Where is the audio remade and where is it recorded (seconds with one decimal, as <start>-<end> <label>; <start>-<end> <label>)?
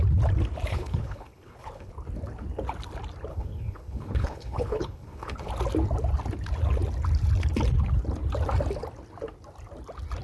0.0-0.7 recorded; 0.7-1.9 remade; 1.9-3.3 recorded; 3.3-5.5 remade; 5.5-10.2 recorded